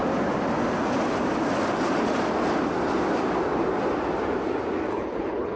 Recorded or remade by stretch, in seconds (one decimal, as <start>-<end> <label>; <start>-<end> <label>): 0.0-4.9 recorded; 4.9-5.6 remade

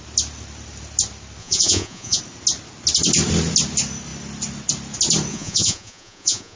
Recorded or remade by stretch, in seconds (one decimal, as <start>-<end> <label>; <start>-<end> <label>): 0.0-1.4 recorded; 1.4-2.2 remade; 2.2-5.3 recorded; 5.3-6.6 remade